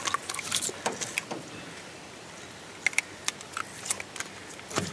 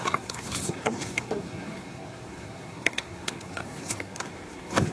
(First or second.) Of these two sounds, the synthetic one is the second